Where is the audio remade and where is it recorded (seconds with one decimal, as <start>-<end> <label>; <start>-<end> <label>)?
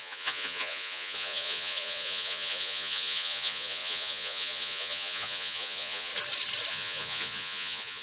0.0-6.1 remade; 6.1-6.7 recorded; 6.7-8.0 remade